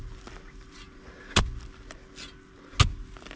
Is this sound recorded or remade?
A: recorded